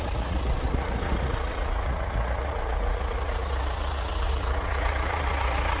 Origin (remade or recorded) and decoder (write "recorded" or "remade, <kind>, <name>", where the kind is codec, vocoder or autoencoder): remade, vocoder, Vocos